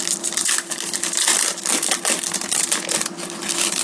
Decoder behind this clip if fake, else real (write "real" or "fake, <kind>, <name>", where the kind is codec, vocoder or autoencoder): real